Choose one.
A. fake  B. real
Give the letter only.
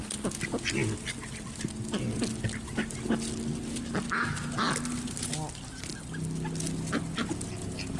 B